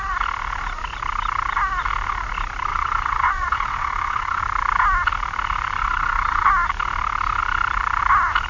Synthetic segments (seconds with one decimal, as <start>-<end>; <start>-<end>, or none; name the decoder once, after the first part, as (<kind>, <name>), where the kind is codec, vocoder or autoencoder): 2.7-4.4 (vocoder, WaveNeXt); 5.8-6.5